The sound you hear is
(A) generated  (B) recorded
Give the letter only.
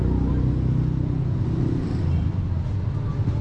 B